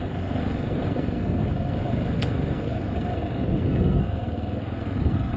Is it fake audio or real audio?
fake